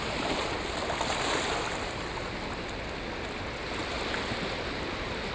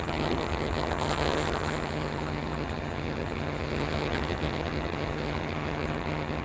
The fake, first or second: second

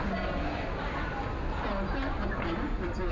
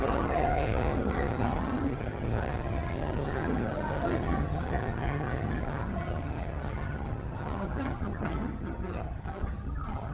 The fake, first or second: second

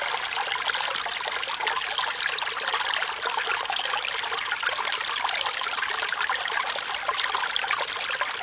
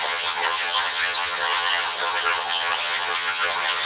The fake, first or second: second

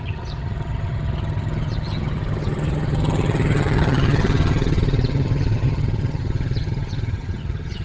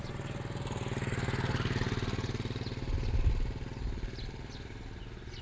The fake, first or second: first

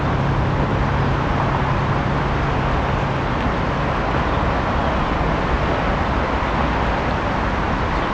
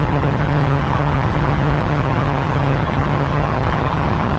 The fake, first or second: second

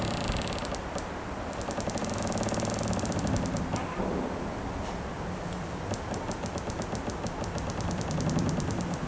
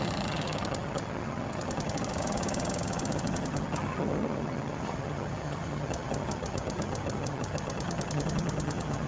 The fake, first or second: second